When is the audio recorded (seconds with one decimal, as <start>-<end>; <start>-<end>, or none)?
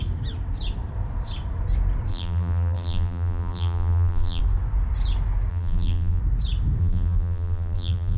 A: 0.0-2.1; 4.4-5.5; 6.2-6.8